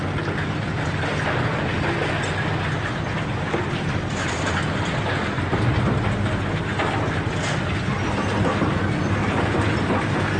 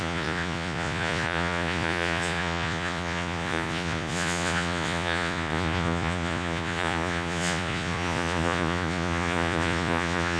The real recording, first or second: first